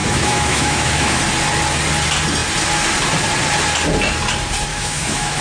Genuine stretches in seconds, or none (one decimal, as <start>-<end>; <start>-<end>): 1.2-4.7